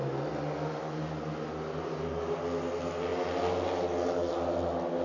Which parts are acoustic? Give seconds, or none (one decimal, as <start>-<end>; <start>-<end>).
0.0-5.0

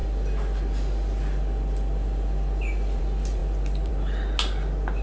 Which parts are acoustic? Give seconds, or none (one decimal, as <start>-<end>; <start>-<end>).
0.0-5.0

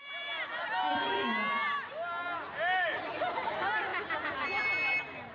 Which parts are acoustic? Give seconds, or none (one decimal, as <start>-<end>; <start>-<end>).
0.0-5.3

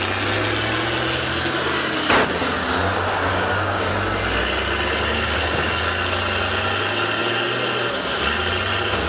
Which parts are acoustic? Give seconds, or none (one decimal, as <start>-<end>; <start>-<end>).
0.0-3.3; 3.9-9.1